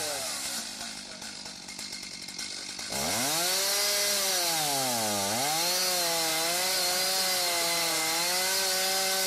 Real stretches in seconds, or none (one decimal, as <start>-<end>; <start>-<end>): 0.0-9.3